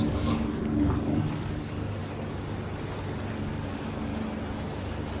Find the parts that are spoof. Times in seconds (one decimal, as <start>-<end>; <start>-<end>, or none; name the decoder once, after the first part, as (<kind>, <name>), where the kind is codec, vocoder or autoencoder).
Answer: 0.0-2.0 (codec, DAC); 3.3-4.1